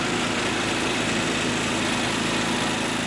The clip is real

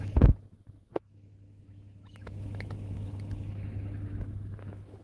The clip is fake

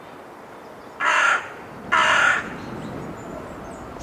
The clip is real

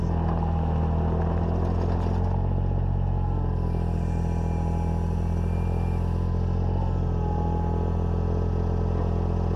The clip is real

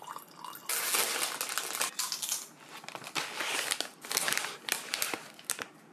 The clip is real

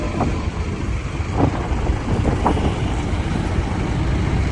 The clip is real